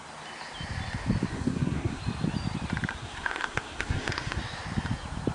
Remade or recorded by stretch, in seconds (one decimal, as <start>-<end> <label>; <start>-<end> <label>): 0.0-1.3 recorded; 1.3-2.0 remade; 2.0-2.9 recorded; 2.9-4.4 remade; 4.4-5.3 recorded